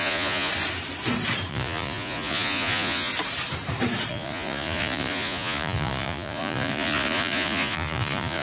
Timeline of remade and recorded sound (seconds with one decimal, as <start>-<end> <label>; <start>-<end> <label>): 0.0-0.5 remade; 0.5-1.5 recorded; 1.5-3.1 remade; 3.1-4.1 recorded; 4.1-8.4 remade